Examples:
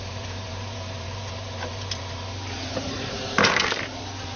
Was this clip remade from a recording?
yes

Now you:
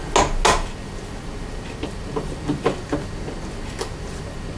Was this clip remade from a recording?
no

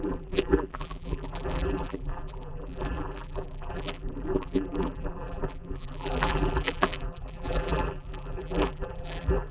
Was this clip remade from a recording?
yes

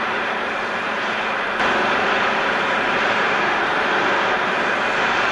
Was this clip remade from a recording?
yes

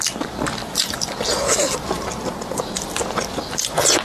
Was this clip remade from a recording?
no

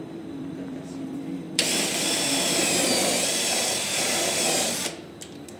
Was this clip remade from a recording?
yes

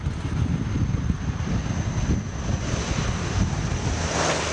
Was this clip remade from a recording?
no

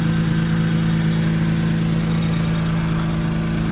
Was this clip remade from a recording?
no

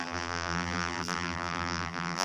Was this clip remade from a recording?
yes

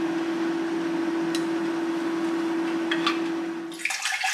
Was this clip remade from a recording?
no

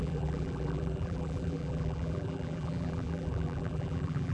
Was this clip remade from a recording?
yes